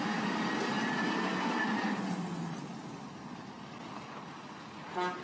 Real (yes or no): yes